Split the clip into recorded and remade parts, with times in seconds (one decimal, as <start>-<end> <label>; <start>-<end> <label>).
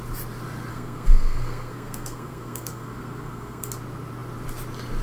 0.0-0.7 recorded; 0.7-3.7 remade; 3.7-5.0 recorded